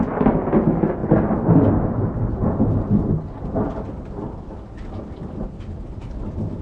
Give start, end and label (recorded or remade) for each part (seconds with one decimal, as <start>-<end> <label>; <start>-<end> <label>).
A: 0.0-6.6 recorded